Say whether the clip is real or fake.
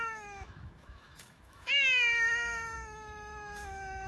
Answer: fake